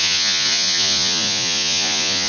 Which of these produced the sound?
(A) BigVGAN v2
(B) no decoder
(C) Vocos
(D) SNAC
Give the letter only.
C